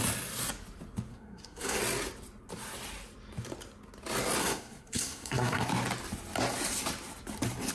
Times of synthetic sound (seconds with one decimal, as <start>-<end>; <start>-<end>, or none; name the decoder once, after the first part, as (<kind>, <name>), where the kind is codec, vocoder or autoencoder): 1.1-1.8 (codec, SNAC); 4.4-5.7